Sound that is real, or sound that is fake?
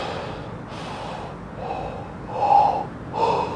real